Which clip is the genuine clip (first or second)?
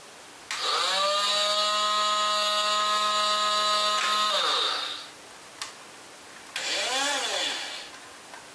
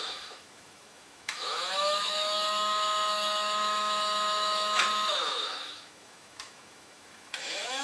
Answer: first